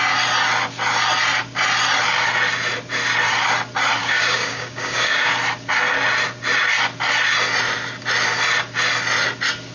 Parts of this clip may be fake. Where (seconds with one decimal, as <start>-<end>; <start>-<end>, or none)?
4.0-5.3